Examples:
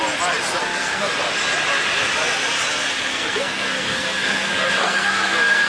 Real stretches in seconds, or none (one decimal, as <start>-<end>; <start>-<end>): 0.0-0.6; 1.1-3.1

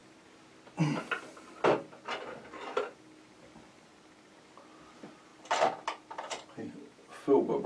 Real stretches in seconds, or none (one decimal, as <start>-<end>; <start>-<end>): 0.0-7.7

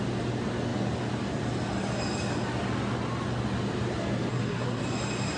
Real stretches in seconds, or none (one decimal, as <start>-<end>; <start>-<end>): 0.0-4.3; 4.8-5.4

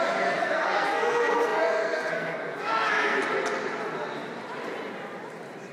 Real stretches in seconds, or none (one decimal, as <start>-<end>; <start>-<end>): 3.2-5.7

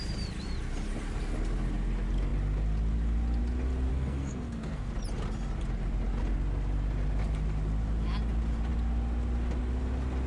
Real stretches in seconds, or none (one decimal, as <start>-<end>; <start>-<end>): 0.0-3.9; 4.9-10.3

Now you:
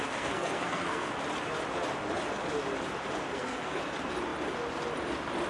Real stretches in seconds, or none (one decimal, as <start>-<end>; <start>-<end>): 1.1-3.3; 3.8-5.5

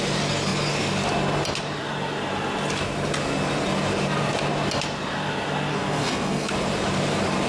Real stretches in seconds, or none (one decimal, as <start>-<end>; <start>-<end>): 0.0-5.7; 6.5-7.5

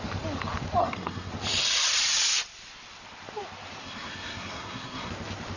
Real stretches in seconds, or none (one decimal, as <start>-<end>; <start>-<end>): 0.0-0.8; 1.3-3.8; 5.1-5.6